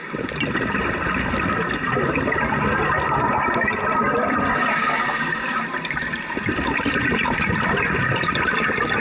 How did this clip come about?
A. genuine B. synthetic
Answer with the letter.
A